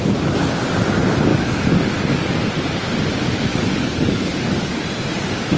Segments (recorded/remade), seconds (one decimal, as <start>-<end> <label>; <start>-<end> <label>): 0.0-1.3 recorded; 1.3-2.5 remade; 2.5-3.5 recorded; 3.5-4.8 remade; 4.8-5.6 recorded